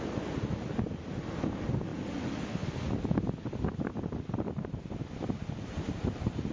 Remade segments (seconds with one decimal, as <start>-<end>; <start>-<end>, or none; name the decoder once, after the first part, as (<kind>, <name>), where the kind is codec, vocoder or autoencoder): none